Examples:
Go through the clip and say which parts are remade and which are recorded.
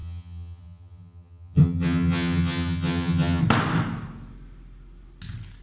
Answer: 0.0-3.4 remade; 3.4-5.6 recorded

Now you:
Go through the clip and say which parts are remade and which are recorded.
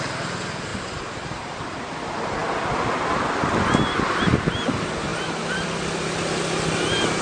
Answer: 0.0-7.2 recorded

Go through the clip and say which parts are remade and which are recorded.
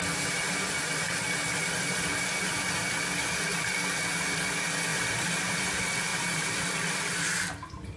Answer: 0.0-4.9 recorded; 4.9-5.6 remade; 5.6-6.1 recorded; 6.1-6.6 remade; 6.6-8.0 recorded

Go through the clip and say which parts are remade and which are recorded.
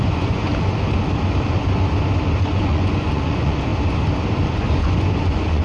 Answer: 0.0-0.5 remade; 0.5-2.4 recorded; 2.4-3.7 remade; 3.7-4.5 recorded; 4.5-5.6 remade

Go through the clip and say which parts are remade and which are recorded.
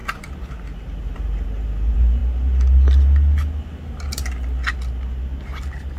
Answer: 0.0-1.0 recorded; 1.0-2.2 remade; 2.2-6.0 recorded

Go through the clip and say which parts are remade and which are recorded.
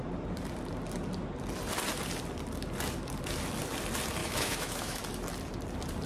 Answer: 0.0-4.2 recorded; 4.2-5.0 remade; 5.0-6.1 recorded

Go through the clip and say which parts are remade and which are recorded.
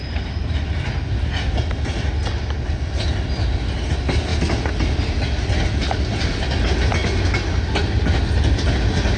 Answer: 0.0-9.2 recorded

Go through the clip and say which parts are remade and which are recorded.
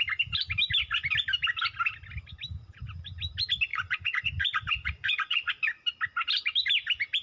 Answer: 0.0-3.7 recorded; 3.7-5.5 remade; 5.5-7.2 recorded